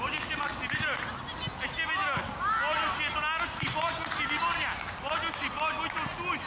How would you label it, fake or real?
real